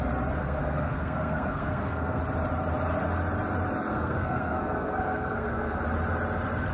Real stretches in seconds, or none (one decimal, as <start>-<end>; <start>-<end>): 0.0-0.4; 2.2-3.9; 5.8-6.7